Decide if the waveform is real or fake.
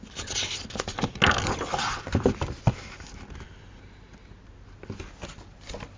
real